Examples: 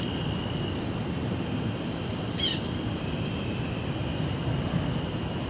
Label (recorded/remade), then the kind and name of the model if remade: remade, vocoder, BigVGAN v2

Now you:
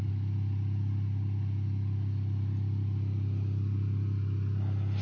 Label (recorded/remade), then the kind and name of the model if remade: recorded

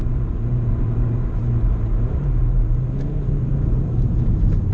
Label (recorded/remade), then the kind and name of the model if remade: remade, vocoder, BigVGAN v2